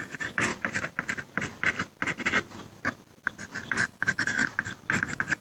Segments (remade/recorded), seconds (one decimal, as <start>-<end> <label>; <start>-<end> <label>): 0.0-0.5 remade; 0.5-3.7 recorded; 3.7-4.4 remade; 4.4-5.0 recorded; 5.0-5.4 remade